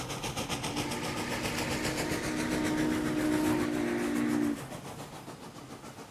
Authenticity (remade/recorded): recorded